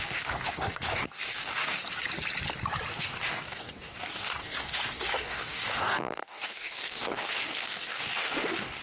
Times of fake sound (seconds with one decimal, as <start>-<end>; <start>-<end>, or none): 0.0-1.8; 2.9-8.8